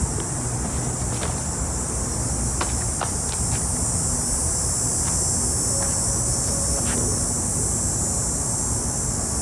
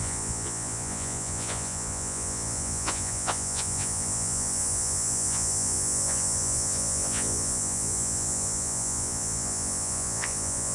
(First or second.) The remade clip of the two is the second